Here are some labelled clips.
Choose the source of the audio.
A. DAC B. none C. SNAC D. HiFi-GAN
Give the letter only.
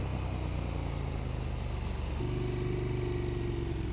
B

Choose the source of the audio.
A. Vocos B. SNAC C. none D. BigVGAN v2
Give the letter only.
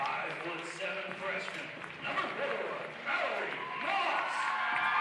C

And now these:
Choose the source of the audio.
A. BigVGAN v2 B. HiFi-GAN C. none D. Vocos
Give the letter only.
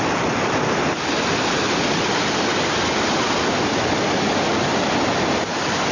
A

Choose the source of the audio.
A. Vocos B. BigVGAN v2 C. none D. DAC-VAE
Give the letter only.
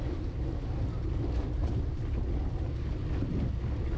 C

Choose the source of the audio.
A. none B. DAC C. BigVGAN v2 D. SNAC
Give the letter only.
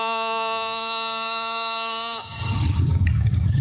B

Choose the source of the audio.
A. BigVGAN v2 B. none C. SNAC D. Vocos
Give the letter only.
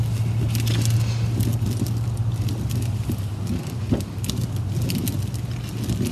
B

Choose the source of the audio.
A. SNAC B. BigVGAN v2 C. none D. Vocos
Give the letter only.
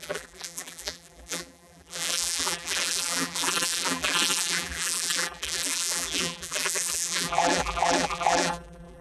B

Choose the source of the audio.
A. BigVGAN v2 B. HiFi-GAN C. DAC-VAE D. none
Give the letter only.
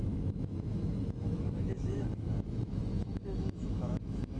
C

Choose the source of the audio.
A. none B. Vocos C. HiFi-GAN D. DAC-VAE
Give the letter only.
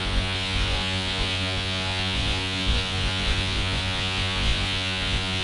B